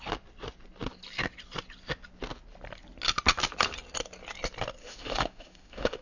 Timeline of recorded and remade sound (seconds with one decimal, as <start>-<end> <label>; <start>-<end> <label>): 0.0-4.8 recorded; 4.8-6.0 remade